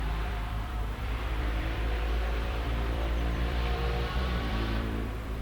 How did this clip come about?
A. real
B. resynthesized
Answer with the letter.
B